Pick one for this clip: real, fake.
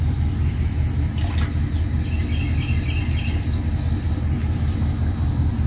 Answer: real